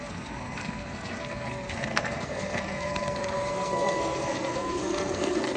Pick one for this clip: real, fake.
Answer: fake